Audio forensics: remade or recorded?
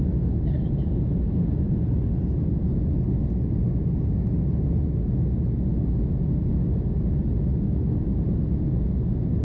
recorded